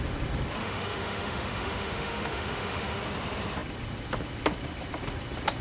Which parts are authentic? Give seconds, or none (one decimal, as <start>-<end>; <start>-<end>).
0.0-0.6; 3.0-5.6